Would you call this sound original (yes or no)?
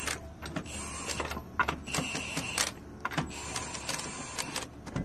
yes